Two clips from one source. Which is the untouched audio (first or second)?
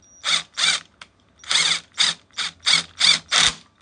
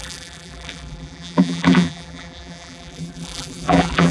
first